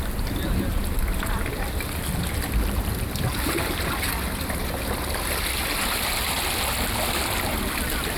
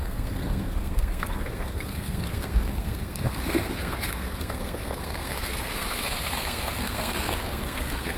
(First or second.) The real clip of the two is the first